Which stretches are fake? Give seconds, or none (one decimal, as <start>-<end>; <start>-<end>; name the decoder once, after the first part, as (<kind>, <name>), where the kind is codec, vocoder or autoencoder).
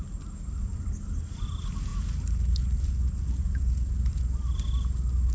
none